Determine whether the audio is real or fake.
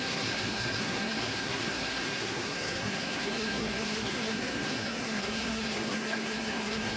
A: fake